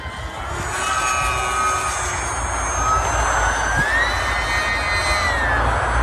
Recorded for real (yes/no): yes